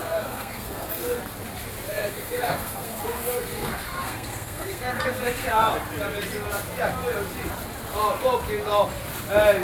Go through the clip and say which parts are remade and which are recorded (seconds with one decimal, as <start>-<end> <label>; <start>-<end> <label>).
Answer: 0.0-1.2 remade; 1.2-1.9 recorded; 1.9-5.7 remade; 5.7-9.6 recorded

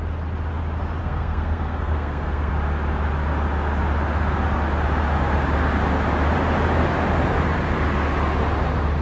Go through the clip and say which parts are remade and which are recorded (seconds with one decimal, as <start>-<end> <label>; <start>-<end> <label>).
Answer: 0.0-1.0 recorded; 1.0-2.5 remade; 2.5-9.0 recorded

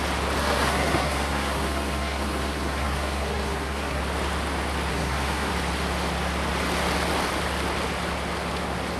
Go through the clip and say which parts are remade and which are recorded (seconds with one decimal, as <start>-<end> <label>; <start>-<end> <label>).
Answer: 0.0-0.4 recorded; 0.4-4.0 remade; 4.0-4.9 recorded; 4.9-5.5 remade; 5.5-9.0 recorded

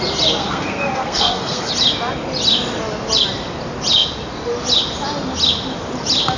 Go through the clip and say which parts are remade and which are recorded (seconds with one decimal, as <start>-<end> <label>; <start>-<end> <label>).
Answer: 0.0-0.4 recorded; 0.4-1.7 remade; 1.7-6.4 recorded

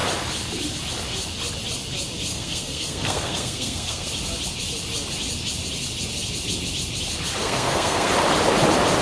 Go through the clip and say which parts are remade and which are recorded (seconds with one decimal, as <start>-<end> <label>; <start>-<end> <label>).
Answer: 0.0-2.3 recorded; 2.3-4.1 remade; 4.1-7.4 recorded; 7.4-8.1 remade; 8.1-9.0 recorded